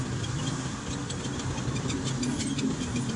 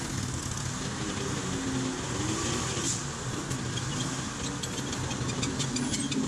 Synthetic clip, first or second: first